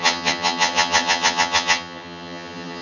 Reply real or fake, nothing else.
fake